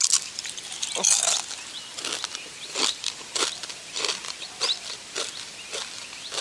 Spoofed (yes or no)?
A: no